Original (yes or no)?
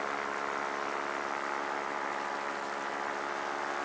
yes